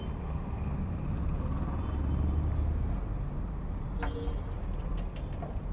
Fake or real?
real